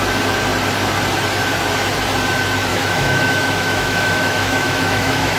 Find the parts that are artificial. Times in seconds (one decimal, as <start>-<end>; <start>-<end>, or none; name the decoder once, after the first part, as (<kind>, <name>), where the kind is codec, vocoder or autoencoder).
2.7-5.4 (autoencoder, DAC-VAE)